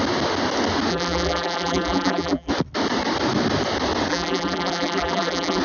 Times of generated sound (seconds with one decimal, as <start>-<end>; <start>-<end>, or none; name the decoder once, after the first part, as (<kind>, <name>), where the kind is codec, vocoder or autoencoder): 0.9-2.5 (vocoder, BigVGAN v2); 4.1-5.6